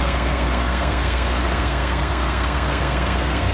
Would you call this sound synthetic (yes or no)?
yes